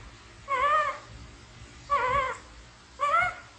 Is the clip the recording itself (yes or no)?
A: yes